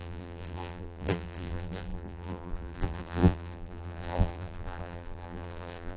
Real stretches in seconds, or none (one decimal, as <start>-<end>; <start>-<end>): none